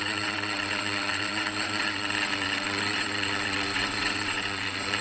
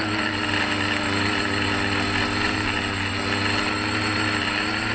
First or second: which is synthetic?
first